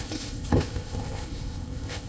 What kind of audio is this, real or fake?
fake